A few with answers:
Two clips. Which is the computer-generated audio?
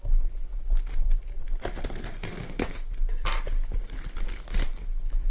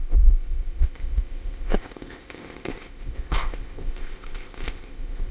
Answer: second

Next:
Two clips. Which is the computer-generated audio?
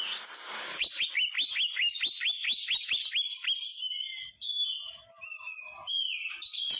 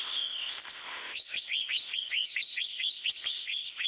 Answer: second